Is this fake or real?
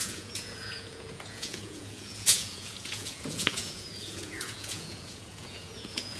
fake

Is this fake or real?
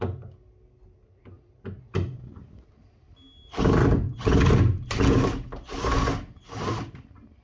real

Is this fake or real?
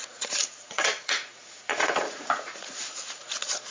fake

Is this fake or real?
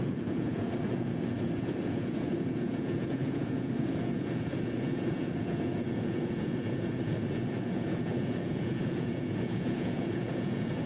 fake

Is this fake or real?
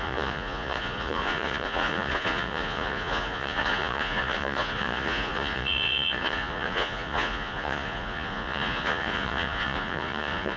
fake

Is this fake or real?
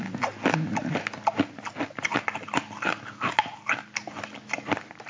real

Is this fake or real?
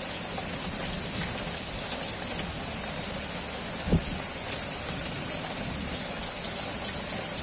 real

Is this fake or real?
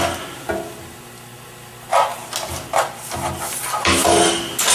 real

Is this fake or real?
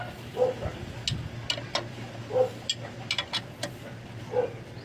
real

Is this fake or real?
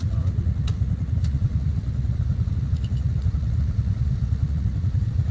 fake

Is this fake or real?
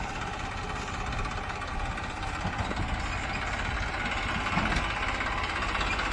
real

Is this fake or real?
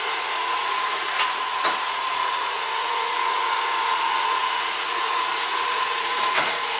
fake